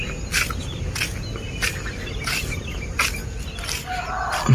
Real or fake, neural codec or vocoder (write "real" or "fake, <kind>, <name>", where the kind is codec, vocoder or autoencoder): real